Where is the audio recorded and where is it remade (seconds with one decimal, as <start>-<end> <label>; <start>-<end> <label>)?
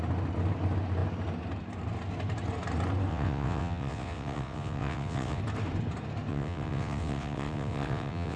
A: 0.0-3.1 recorded; 3.1-5.4 remade; 5.4-6.3 recorded; 6.3-8.4 remade